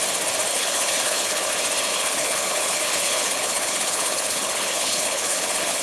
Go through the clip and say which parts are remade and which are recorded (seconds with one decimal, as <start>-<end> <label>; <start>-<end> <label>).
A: 0.0-0.5 recorded; 0.5-1.5 remade; 1.5-1.9 recorded; 1.9-5.8 remade